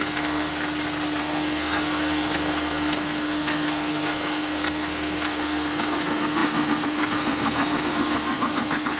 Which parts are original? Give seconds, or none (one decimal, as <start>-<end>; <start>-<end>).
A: 0.5-1.2